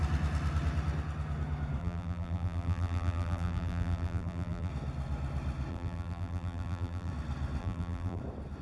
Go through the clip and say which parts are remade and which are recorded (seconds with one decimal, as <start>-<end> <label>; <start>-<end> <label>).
0.0-1.8 recorded; 1.8-4.7 remade; 4.7-5.7 recorded; 5.7-7.1 remade; 7.1-7.6 recorded; 7.6-8.2 remade; 8.2-8.6 recorded